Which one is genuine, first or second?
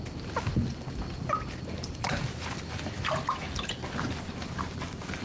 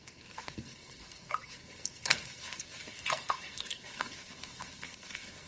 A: first